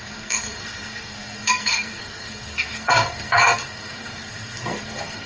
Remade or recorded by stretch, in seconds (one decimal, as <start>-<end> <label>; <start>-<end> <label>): 0.0-5.3 remade